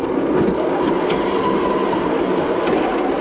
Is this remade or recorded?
recorded